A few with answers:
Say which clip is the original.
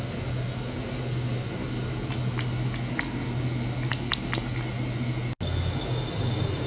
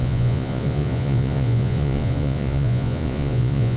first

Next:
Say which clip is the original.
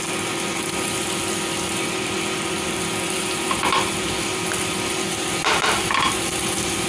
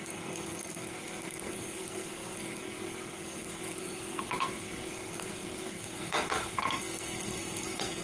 first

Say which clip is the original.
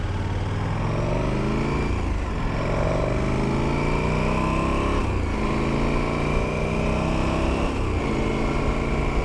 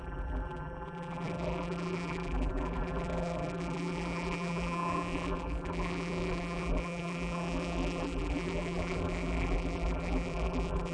first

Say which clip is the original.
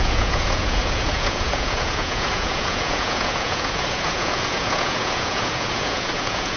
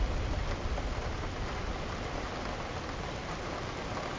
second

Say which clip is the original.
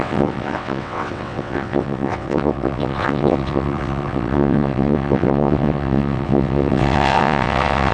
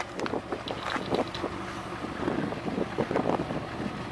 second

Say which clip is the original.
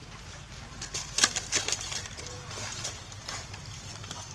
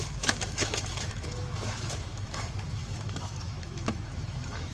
first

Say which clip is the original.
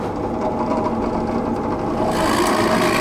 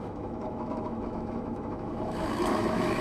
first